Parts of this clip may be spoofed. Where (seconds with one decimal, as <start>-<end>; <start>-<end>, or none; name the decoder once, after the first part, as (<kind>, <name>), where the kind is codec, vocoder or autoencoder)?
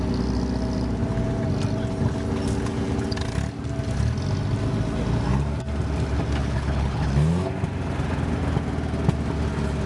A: 6.4-7.1 (codec, HILCodec)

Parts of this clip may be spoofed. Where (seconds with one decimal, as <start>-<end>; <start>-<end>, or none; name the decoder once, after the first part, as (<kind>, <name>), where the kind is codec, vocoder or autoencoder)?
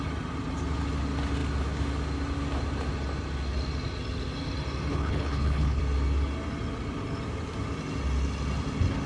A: 4.9-5.8 (codec, HILCodec)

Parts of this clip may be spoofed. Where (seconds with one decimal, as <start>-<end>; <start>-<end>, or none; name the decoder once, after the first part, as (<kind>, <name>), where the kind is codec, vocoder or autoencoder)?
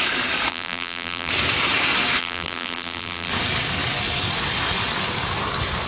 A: 0.5-1.3 (vocoder, BigVGAN v2); 2.2-3.3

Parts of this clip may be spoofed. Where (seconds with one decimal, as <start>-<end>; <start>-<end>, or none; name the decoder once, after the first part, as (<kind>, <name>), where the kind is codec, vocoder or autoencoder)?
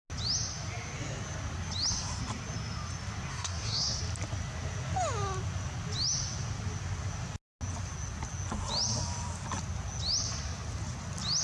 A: 3.3-4.0 (codec, SNAC)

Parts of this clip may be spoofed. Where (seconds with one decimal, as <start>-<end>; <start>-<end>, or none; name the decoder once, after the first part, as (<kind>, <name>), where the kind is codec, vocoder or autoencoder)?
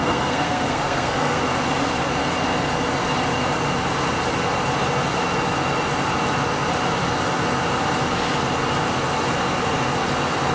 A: 0.0-1.4 (codec, SNAC)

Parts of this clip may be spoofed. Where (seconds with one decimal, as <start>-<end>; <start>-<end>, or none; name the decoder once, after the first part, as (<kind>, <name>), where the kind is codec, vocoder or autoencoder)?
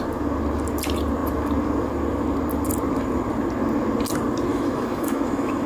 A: 4.5-5.7 (autoencoder, DAC-VAE)